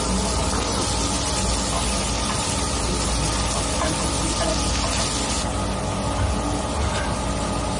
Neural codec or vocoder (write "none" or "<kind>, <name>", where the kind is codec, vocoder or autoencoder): none